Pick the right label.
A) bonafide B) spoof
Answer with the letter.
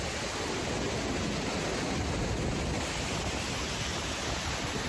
A